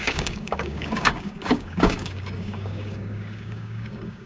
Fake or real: fake